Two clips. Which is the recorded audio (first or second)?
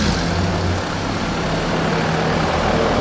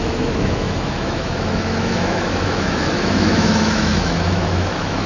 first